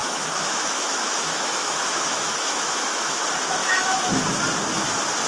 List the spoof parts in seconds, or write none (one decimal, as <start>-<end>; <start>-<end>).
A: 0.0-3.2; 3.6-4.2